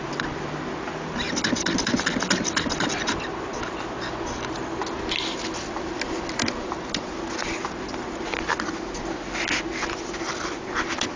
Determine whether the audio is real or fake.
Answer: real